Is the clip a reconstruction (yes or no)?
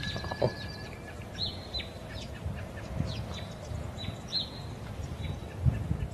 no